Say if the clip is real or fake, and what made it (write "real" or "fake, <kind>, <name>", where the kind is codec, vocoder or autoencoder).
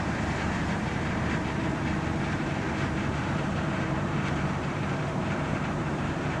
fake, vocoder, BigVGAN v2